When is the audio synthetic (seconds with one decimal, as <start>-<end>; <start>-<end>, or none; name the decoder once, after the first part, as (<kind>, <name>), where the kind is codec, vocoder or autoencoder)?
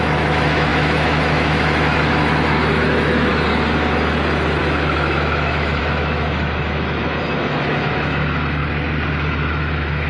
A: 0.0-3.3 (autoencoder, DAC-VAE); 4.6-8.6; 9.3-10.1